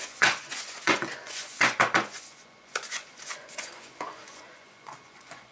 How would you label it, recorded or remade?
remade